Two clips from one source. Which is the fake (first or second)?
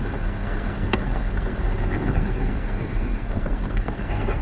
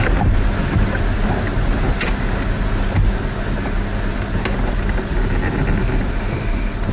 first